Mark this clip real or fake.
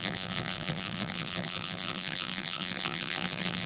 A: fake